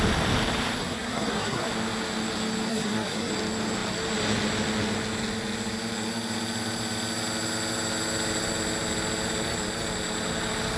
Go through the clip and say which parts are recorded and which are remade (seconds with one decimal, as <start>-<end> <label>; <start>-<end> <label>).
0.0-0.8 recorded; 0.8-1.7 remade; 1.7-2.7 recorded; 2.7-3.3 remade; 3.3-10.8 recorded